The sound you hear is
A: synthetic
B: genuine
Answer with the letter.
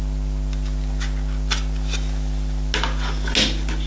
B